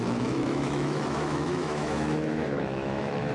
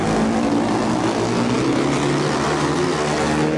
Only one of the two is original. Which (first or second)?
second